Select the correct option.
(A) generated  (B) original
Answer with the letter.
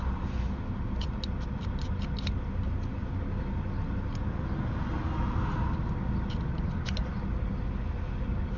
B